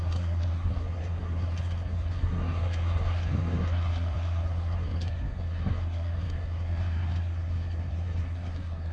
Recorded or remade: remade